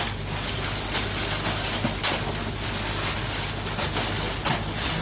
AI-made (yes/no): no